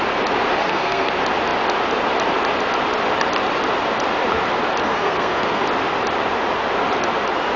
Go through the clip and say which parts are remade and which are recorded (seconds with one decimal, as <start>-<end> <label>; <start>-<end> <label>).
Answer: 0.0-0.6 recorded; 0.6-1.1 remade; 1.1-4.8 recorded; 4.8-5.6 remade; 5.6-7.6 recorded